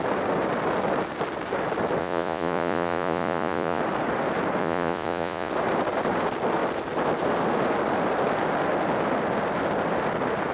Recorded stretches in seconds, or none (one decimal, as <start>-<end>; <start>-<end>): 0.0-2.0; 3.8-4.6; 5.5-10.5